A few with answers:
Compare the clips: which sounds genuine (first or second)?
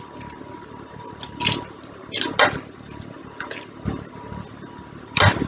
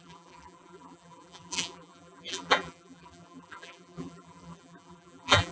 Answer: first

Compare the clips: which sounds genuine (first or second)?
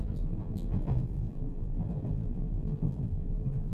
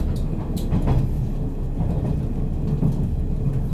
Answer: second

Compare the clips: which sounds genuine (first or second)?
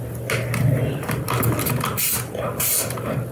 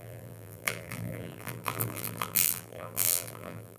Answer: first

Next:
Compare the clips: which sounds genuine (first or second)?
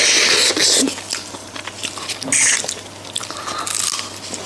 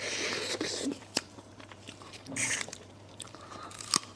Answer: first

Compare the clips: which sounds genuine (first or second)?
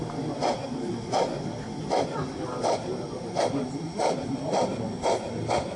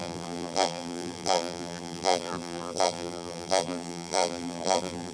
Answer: first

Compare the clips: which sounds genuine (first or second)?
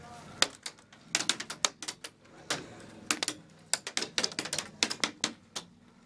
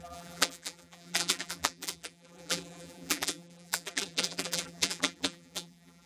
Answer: first